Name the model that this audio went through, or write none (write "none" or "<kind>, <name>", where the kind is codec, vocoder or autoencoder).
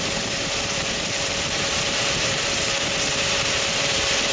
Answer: vocoder, BigVGAN v2